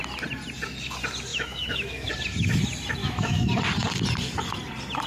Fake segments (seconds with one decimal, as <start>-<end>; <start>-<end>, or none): 1.3-2.1; 3.0-3.5